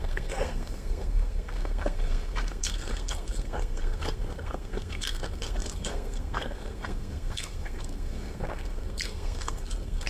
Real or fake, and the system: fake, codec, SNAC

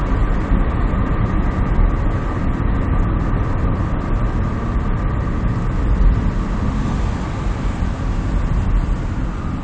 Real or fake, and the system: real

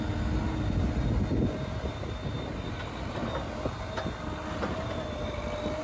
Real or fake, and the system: real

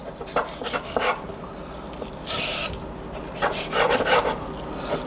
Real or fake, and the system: real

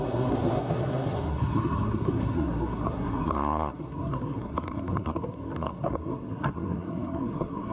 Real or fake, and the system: fake, codec, SNAC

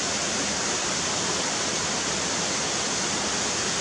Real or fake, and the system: real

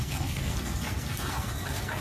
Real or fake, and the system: fake, codec, SNAC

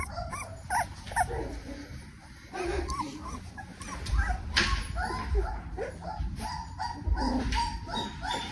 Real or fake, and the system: real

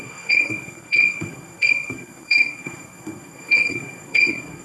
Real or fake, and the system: fake, codec, SNAC